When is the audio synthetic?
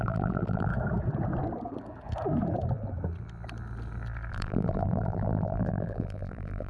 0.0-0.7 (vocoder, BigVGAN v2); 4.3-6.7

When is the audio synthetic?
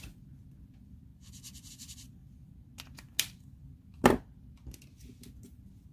1.1-1.7 (vocoder, BigVGAN v2)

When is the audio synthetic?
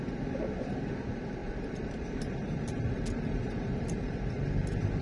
1.4-4.3 (vocoder, BigVGAN v2)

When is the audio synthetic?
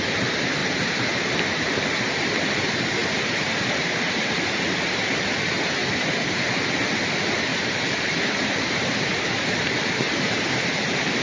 0.6-1.8 (vocoder, BigVGAN v2); 3.0-5.5; 7.5-11.2